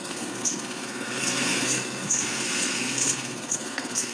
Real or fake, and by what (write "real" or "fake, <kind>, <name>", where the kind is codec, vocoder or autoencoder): fake, codec, SNAC